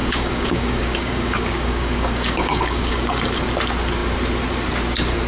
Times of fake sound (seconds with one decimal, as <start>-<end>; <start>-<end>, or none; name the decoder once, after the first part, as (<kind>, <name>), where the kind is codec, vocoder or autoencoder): 0.0-3.2 (codec, DAC)